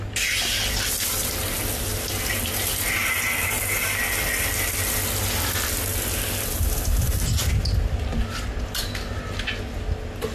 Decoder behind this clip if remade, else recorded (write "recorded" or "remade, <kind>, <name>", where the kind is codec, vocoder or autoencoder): recorded